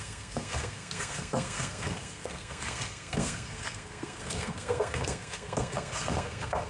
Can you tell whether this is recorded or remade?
remade